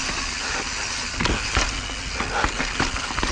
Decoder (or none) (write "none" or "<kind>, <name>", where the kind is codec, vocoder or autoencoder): none